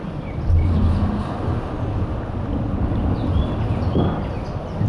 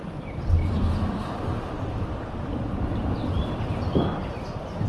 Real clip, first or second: first